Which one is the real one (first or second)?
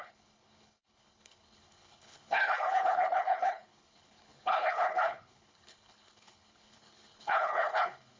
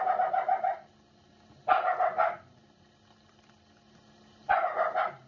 second